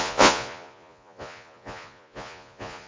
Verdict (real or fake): fake